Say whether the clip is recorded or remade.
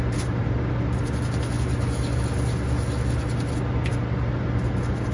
recorded